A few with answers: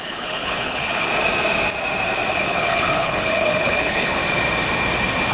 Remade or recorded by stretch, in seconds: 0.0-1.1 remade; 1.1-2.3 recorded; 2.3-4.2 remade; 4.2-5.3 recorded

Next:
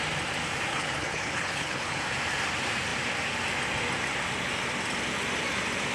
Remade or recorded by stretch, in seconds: 0.0-0.7 recorded; 0.7-2.0 remade; 2.0-5.9 recorded

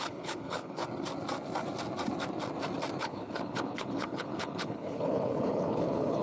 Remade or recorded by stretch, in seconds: 0.0-0.8 remade; 0.8-3.0 recorded; 3.0-6.2 remade

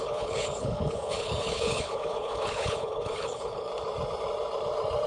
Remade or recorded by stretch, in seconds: 0.0-3.7 remade; 3.7-5.1 recorded

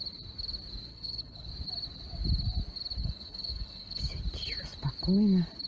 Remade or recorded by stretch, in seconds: 0.0-0.9 recorded; 0.9-1.5 remade; 1.5-3.0 recorded; 3.0-4.0 remade; 4.0-5.7 recorded

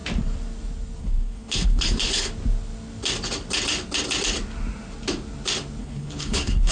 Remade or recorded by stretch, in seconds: 0.0-1.0 recorded; 1.0-2.3 remade; 2.3-5.8 recorded; 5.8-6.7 remade